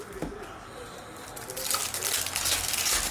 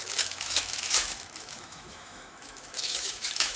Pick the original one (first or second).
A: first